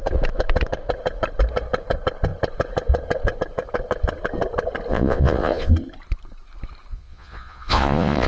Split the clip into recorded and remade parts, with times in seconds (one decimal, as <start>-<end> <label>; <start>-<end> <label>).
0.0-4.9 recorded; 4.9-5.7 remade; 5.7-6.9 recorded; 6.9-8.3 remade